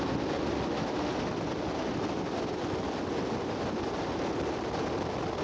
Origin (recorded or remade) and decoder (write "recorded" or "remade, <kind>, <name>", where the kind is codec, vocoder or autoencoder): recorded